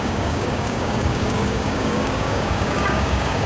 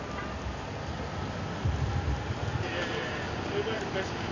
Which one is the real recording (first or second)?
second